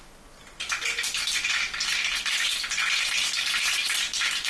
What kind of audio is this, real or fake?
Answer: real